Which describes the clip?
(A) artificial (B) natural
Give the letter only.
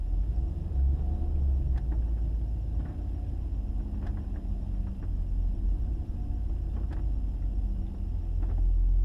B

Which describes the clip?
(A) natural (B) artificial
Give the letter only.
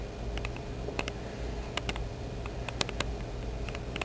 A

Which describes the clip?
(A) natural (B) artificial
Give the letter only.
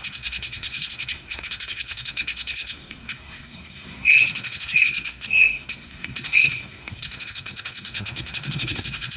B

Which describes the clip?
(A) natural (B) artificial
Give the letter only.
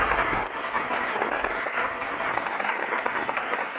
B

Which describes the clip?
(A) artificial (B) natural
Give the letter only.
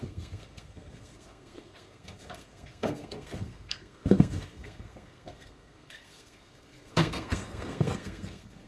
A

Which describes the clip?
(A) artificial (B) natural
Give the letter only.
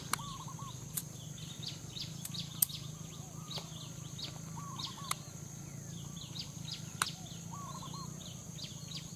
B